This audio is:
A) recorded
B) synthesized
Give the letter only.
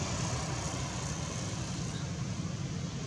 A